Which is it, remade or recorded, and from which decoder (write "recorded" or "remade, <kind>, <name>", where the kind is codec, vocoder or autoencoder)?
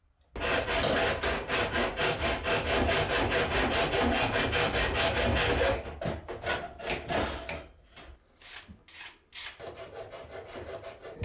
recorded